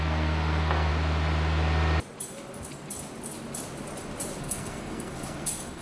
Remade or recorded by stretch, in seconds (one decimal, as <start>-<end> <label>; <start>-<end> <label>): 0.0-0.9 remade; 0.9-4.4 recorded; 4.4-5.8 remade